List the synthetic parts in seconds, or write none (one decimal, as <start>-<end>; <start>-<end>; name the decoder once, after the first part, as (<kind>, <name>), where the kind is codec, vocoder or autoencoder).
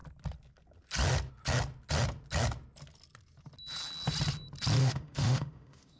4.8-6.0 (autoencoder, DAC-VAE)